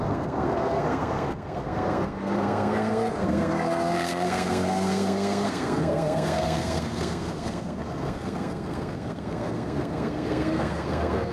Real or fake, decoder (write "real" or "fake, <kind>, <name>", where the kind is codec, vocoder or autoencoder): fake, codec, SNAC